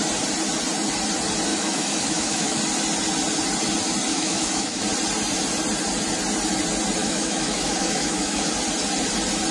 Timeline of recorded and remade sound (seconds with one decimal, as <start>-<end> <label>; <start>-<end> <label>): 0.0-1.5 recorded; 1.5-2.6 remade; 2.6-4.1 recorded; 4.1-4.8 remade; 4.8-7.0 recorded; 7.0-8.5 remade; 8.5-9.5 recorded